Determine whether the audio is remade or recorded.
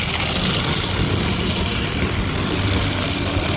recorded